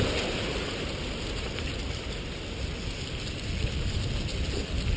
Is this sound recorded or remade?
recorded